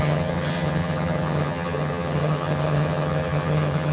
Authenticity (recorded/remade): remade